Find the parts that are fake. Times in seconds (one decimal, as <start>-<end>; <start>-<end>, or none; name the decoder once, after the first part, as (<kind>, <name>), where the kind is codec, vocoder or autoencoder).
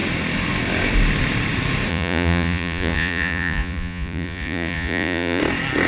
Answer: 1.9-5.4 (vocoder, Vocos)